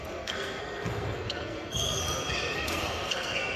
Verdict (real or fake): fake